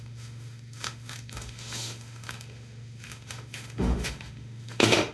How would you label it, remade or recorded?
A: remade